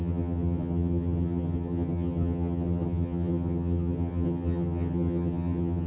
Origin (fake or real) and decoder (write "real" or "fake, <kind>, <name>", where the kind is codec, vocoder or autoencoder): fake, vocoder, HiFi-GAN